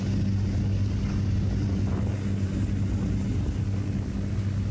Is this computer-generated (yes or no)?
no